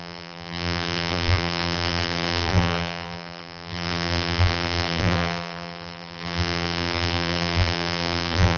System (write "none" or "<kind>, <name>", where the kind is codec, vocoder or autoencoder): vocoder, BigVGAN v2